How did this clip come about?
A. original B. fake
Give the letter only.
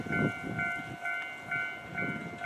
A